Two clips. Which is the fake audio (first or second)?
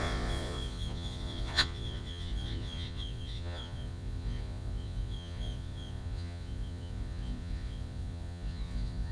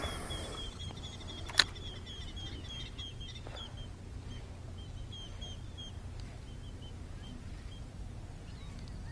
first